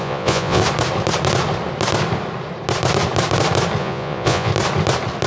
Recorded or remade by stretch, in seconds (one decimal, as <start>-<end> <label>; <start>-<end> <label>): 0.0-0.6 remade; 0.6-3.8 recorded; 3.8-4.5 remade; 4.5-5.3 recorded